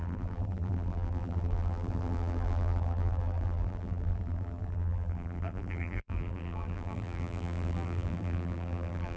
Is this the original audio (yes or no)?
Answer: no